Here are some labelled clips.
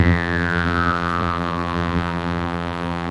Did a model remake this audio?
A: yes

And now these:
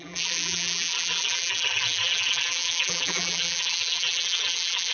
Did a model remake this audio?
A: yes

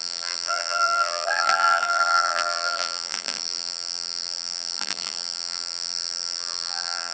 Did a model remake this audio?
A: yes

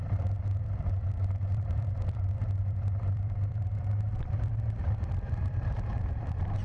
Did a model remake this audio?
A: yes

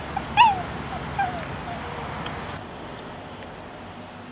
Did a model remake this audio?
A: no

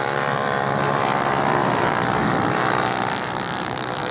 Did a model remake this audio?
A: yes